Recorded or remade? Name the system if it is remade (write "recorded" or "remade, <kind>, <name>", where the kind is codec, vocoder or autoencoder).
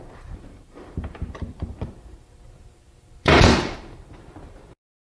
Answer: remade, vocoder, BigVGAN v2